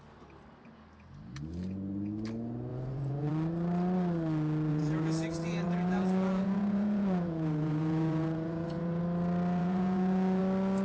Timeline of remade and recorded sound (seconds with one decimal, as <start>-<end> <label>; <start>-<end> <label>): 0.0-2.7 recorded; 2.7-3.3 remade; 3.3-4.7 recorded; 4.7-9.0 remade; 9.0-9.6 recorded; 9.6-10.4 remade; 10.4-10.8 recorded